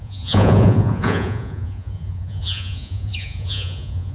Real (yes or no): no